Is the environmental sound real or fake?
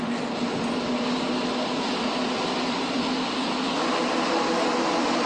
real